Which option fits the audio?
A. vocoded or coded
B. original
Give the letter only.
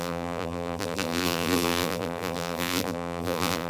A